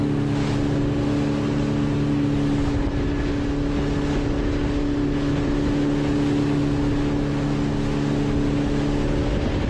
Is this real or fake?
real